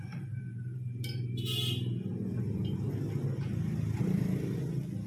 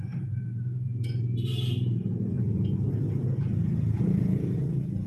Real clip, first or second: first